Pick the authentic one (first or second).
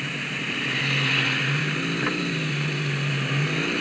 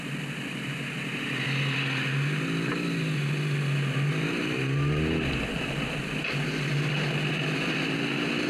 second